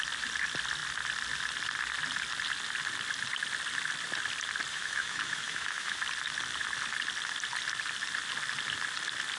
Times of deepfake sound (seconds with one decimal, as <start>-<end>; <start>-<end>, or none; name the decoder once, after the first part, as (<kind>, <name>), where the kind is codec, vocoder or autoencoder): 4.7-6.0 (autoencoder, DAC-VAE)